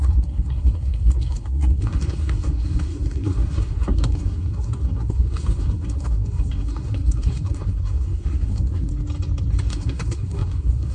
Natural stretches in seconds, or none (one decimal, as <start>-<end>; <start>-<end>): 8.9-9.7

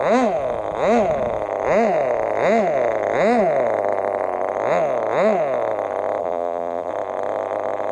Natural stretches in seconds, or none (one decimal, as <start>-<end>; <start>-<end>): 0.0-6.2; 6.9-7.9

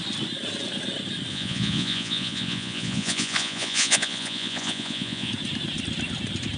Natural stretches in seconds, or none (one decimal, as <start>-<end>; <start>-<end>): 0.0-1.3; 5.3-6.6

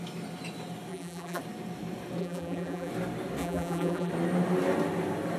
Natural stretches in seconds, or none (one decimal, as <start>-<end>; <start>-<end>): 0.0-0.9; 1.4-2.2; 2.9-3.4; 4.1-5.4